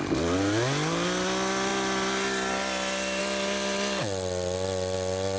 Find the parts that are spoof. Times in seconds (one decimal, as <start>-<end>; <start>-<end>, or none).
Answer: none